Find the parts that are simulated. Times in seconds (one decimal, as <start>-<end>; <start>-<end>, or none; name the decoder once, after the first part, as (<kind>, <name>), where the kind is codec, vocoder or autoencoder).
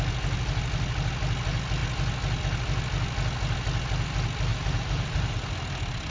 4.5-5.4 (vocoder, BigVGAN v2)